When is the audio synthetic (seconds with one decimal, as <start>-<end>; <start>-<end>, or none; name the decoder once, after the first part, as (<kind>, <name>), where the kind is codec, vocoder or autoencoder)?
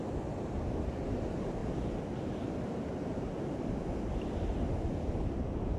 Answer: none